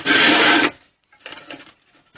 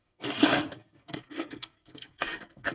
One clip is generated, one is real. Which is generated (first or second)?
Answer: second